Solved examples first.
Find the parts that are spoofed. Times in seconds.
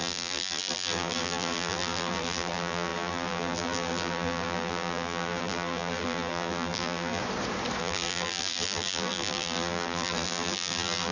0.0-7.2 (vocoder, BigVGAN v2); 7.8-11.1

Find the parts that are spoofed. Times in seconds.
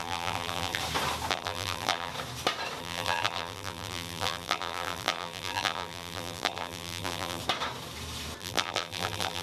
0.0-0.8 (vocoder, BigVGAN v2); 1.3-2.1; 2.8-7.4; 8.4-9.4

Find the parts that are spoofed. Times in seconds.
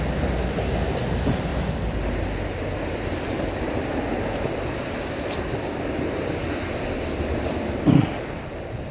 none